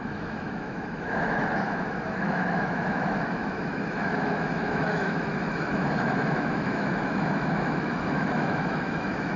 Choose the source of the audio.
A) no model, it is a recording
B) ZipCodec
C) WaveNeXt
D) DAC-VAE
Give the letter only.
D